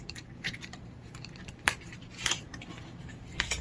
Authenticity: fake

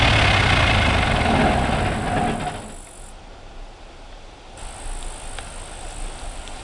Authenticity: real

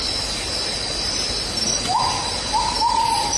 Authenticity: real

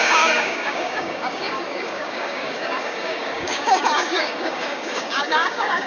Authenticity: fake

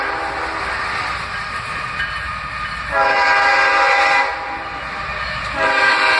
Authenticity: real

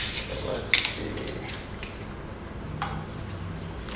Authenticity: real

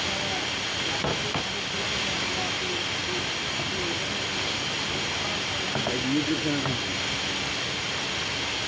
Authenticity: real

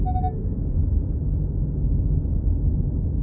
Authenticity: real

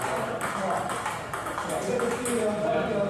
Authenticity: real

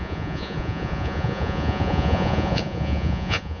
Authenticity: fake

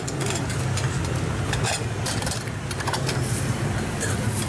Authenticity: real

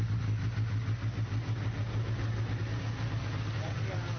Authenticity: real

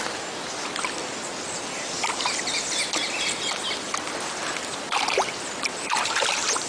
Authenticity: real